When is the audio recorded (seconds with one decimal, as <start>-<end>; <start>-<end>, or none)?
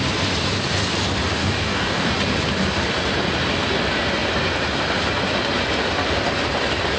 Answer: 0.0-1.4; 2.1-7.0